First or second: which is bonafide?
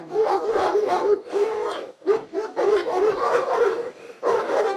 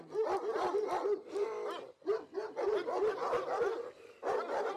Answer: second